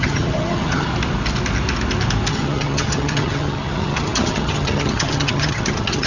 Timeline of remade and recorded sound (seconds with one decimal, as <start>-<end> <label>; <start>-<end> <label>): 0.0-0.9 remade; 0.9-2.3 recorded; 2.3-6.1 remade